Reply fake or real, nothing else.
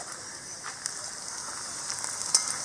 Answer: real